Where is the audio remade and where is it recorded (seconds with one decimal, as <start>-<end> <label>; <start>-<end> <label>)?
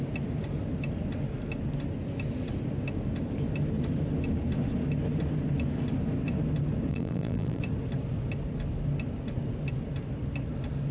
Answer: 0.0-6.9 recorded; 6.9-7.6 remade; 7.6-10.9 recorded